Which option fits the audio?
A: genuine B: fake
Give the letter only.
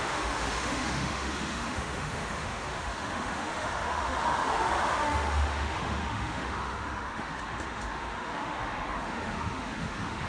B